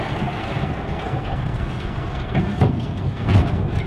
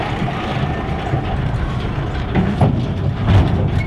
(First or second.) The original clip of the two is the second